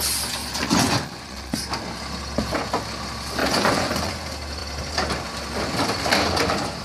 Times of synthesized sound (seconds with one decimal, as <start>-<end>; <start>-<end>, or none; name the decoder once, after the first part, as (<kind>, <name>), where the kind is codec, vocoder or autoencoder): 0.4-1.6 (vocoder, Vocos); 3.4-4.1